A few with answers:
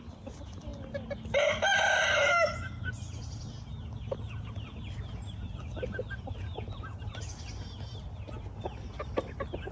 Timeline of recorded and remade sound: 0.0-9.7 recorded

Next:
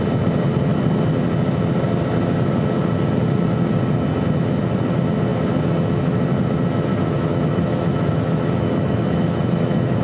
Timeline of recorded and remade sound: 0.0-6.9 recorded; 6.9-10.0 remade